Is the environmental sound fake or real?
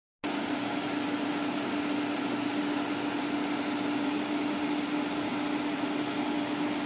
real